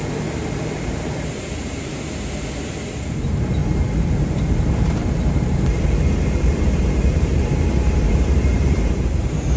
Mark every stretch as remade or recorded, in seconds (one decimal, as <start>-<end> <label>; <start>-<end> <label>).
0.0-0.5 recorded; 0.5-1.9 remade; 1.9-3.1 recorded; 3.1-9.6 remade